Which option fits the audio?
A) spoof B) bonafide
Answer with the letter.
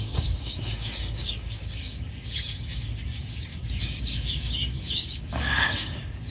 A